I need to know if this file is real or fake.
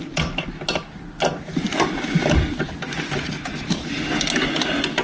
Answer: real